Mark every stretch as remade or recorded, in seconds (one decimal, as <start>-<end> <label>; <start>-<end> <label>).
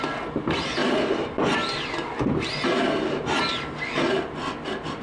0.0-5.0 recorded